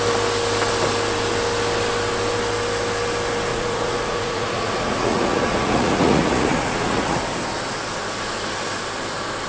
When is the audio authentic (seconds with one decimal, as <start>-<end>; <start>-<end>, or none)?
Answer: 0.0-3.5; 7.2-9.5